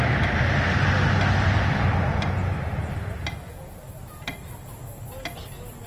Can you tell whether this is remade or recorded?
recorded